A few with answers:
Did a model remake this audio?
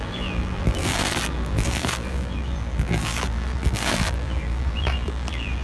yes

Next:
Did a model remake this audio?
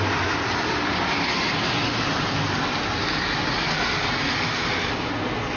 no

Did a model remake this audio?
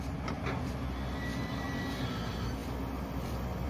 no